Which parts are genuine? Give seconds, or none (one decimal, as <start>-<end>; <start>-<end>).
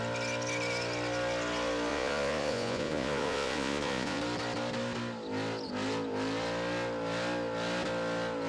0.0-1.9; 4.2-8.5